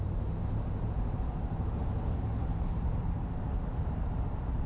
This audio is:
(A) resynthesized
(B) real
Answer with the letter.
A